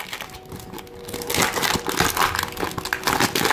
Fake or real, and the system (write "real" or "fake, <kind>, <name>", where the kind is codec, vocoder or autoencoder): real